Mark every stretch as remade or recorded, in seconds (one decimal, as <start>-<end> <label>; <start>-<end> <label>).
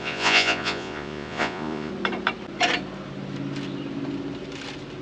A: 0.0-1.9 remade; 1.9-5.0 recorded